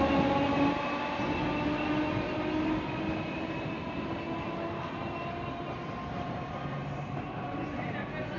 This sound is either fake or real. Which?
real